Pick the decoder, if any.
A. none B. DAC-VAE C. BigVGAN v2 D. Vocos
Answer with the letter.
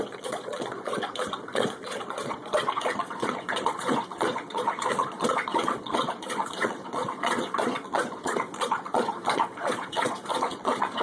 D